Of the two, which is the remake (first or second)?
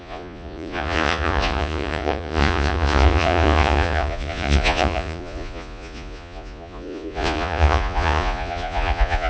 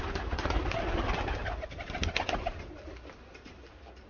first